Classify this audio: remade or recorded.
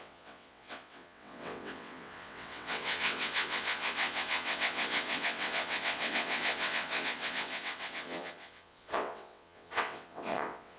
remade